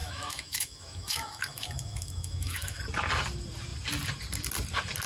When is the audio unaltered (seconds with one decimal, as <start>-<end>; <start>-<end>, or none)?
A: 2.8-5.1